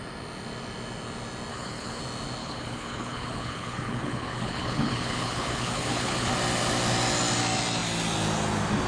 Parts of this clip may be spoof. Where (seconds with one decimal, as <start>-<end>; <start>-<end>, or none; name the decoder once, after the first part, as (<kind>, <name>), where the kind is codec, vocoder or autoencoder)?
1.5-2.0 (codec, HILCodec); 2.4-6.3